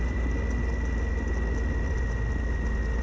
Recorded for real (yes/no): yes